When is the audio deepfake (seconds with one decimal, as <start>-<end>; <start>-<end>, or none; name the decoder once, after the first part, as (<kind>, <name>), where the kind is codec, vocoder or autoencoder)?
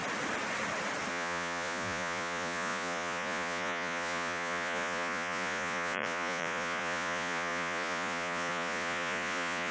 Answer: 1.1-9.7 (vocoder, Vocos)